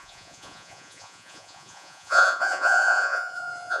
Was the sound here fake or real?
fake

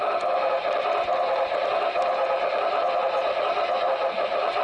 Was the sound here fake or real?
real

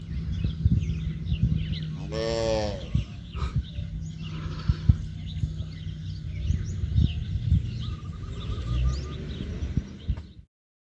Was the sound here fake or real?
real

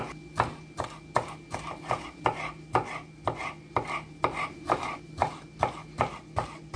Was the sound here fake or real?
real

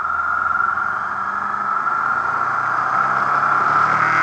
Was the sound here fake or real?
real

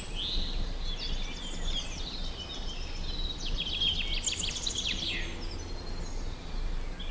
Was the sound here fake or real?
real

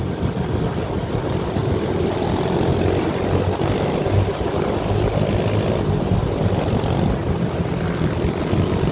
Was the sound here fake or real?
real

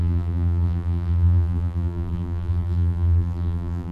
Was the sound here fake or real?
fake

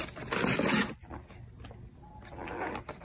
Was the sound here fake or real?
real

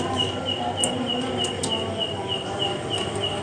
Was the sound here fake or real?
real